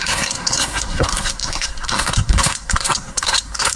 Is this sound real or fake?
fake